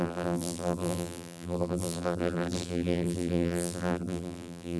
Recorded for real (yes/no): no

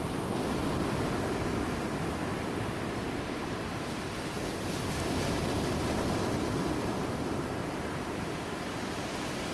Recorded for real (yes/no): no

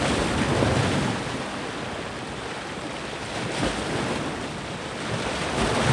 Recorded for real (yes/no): yes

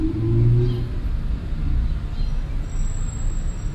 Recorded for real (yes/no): yes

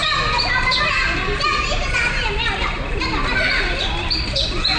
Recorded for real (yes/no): yes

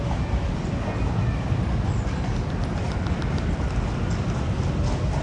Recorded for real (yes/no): yes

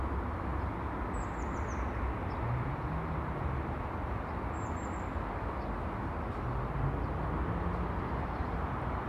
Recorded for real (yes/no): yes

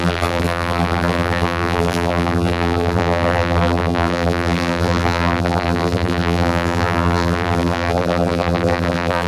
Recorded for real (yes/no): no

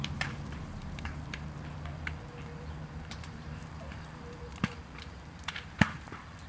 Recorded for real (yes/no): no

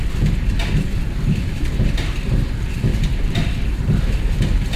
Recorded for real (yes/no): yes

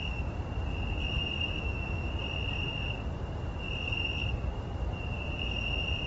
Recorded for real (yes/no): no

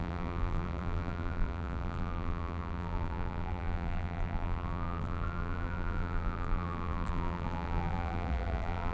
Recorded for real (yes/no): no